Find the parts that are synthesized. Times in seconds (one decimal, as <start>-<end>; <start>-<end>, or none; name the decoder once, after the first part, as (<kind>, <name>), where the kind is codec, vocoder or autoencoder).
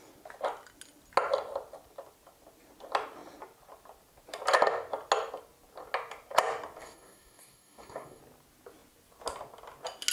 6.8-8.2 (codec, DAC)